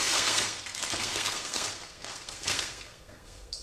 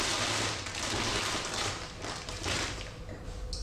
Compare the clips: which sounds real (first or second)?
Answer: second